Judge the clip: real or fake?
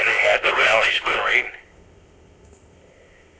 fake